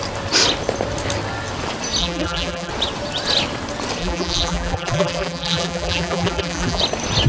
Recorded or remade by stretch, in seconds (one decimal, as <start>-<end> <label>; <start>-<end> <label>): 0.0-2.0 recorded; 2.0-2.7 remade; 2.7-4.0 recorded; 4.0-6.8 remade; 6.8-7.3 recorded